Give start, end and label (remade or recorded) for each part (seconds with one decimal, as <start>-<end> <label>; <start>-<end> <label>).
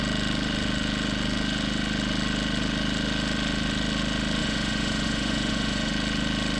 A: 0.0-4.4 recorded; 4.4-5.9 remade; 5.9-6.6 recorded